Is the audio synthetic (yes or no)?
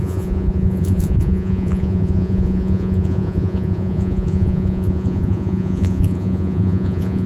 yes